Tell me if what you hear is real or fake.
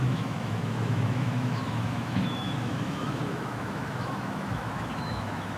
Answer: fake